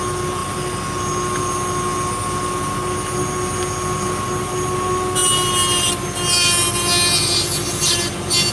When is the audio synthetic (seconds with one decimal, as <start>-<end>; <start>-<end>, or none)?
none

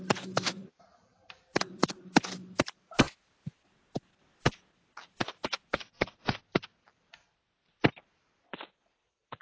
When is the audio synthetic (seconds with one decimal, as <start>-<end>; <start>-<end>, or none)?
none

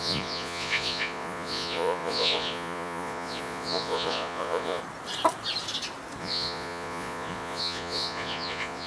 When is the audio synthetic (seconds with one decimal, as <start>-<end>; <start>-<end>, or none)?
0.0-4.8; 6.2-8.9

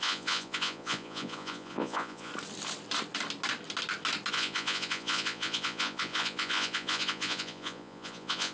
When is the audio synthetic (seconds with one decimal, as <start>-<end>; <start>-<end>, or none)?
0.0-2.3; 4.3-8.5

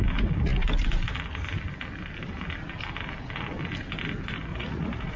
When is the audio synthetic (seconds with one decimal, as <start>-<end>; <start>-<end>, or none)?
4.5-5.2

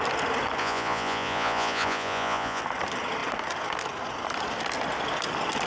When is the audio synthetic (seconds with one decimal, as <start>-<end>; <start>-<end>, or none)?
0.6-2.6